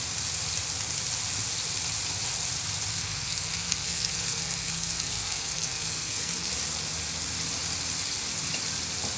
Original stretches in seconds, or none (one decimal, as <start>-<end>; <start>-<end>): 0.0-2.9; 6.5-9.2